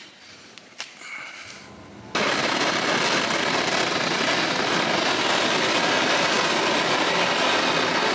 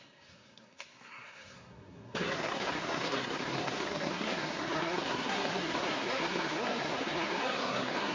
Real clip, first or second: first